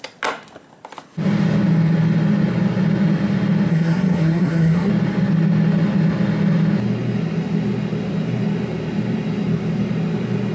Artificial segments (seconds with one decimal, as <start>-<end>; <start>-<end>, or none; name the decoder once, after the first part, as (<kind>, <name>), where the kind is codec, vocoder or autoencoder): 3.7-4.9 (codec, SNAC)